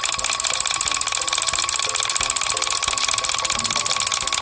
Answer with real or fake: real